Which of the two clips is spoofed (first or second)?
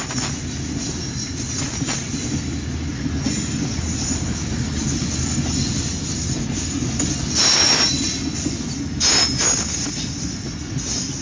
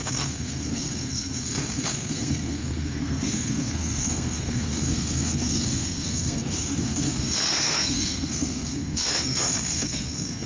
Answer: second